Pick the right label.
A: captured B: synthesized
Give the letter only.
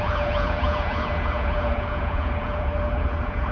B